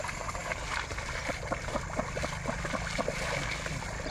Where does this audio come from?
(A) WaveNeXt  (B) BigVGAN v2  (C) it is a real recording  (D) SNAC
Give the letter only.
C